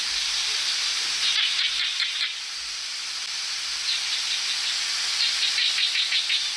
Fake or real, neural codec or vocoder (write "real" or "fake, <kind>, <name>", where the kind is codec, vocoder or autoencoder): real